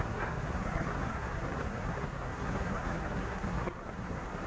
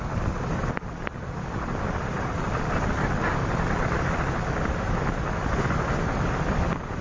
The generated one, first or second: first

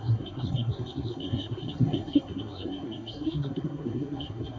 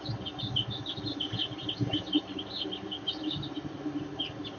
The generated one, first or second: first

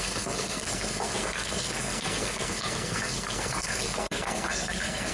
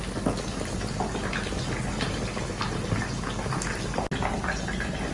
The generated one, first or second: first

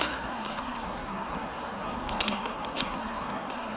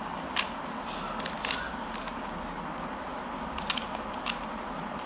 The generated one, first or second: first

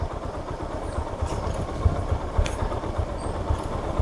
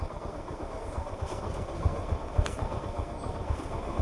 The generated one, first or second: second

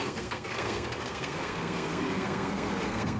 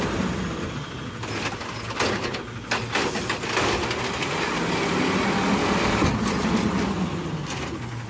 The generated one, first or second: first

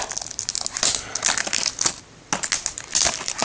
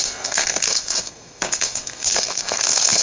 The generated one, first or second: second